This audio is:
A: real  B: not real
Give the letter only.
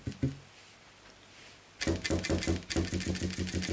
A